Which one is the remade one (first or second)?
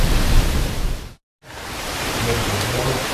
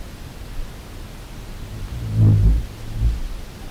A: first